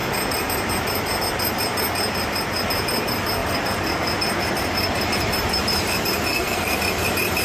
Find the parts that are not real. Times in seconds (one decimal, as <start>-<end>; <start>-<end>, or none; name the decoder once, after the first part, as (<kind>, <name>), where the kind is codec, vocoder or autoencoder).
6.3-6.8 (codec, SNAC)